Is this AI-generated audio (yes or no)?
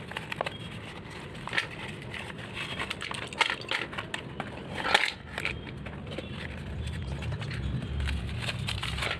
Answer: no